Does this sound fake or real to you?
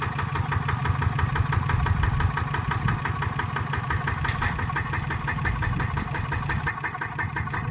real